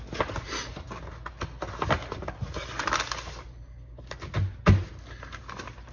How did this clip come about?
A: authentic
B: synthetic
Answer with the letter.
A